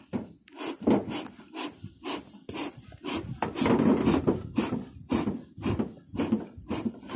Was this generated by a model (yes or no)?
no